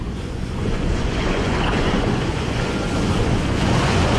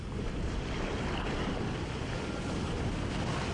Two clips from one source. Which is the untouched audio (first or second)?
second